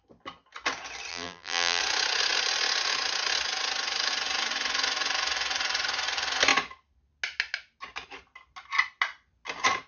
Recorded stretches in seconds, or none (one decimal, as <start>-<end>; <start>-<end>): 0.0-1.1; 1.8-9.9